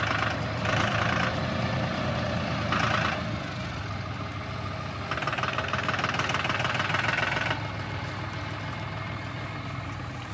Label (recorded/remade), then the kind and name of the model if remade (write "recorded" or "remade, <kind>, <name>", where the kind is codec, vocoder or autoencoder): recorded